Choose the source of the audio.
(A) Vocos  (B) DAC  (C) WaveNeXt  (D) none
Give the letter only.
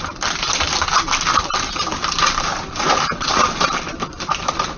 D